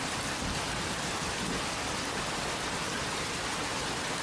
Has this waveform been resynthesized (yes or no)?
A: no